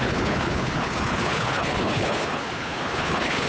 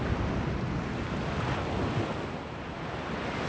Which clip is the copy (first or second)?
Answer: first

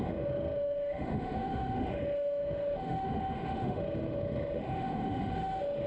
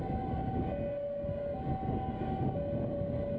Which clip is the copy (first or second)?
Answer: first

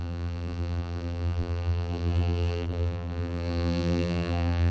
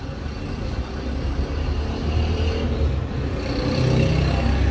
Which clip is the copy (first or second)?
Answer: first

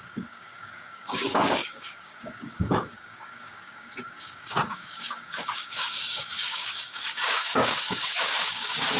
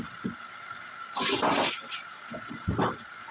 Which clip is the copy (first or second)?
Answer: first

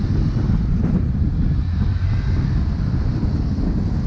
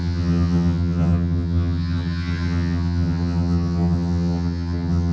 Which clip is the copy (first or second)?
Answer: second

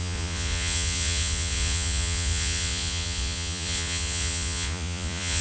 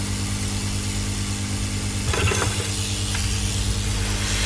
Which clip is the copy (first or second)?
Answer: first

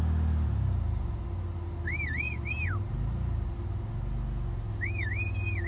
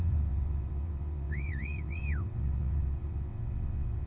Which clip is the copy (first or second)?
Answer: second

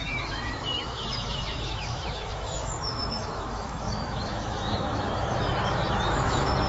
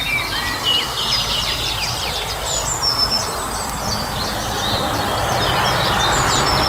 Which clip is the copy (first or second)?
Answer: first